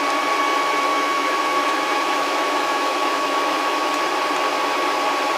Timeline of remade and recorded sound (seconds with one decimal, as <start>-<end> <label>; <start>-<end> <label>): 0.0-0.9 recorded; 0.9-4.1 remade; 4.1-5.4 recorded